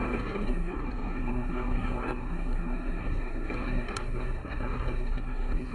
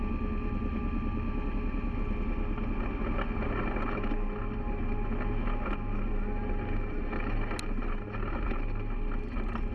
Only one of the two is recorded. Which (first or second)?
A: second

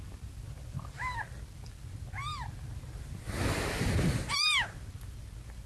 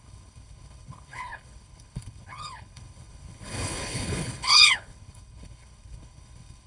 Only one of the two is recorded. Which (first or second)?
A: first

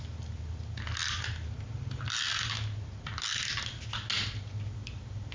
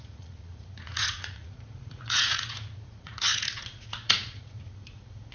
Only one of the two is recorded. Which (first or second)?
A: first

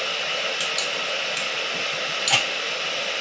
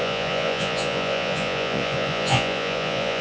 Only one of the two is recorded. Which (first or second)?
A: first